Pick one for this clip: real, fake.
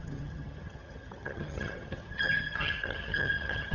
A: fake